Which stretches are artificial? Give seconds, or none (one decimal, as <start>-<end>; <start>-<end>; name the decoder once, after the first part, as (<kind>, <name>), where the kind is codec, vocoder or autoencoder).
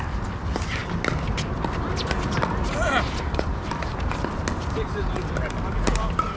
none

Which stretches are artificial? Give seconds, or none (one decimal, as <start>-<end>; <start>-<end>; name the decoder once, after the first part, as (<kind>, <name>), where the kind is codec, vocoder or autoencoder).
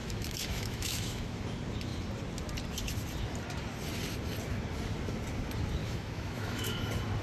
0.0-1.4 (autoencoder, DAC-VAE); 5.8-6.8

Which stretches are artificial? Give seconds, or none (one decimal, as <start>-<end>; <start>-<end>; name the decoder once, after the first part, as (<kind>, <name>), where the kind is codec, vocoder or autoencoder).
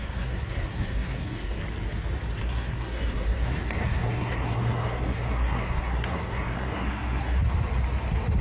0.0-1.6 (codec, SNAC); 2.4-7.4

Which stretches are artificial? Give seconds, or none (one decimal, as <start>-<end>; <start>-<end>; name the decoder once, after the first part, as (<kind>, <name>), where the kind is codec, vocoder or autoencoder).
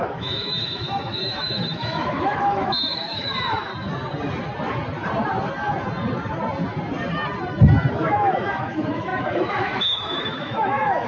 0.0-3.7 (autoencoder, DAC-VAE); 7.9-11.1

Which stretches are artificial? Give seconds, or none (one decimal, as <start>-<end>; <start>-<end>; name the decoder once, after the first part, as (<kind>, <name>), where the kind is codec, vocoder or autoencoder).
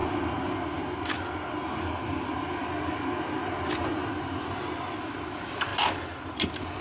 none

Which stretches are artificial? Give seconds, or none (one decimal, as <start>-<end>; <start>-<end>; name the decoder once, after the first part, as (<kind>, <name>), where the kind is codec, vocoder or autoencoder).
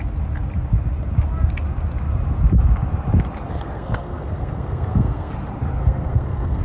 3.5-5.3 (codec, SNAC); 5.8-6.6